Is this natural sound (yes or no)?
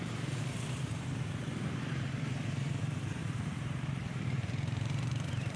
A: no